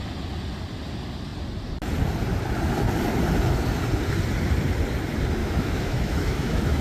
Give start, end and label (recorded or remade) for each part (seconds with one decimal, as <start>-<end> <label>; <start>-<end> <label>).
0.0-5.4 recorded; 5.4-6.8 remade